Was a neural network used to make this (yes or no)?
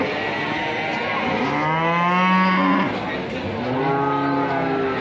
no